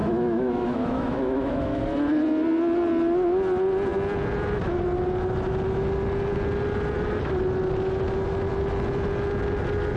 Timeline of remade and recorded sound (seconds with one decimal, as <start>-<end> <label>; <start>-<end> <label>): 0.0-1.8 remade; 1.8-10.0 recorded